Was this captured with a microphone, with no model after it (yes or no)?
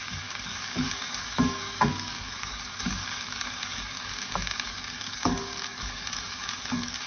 no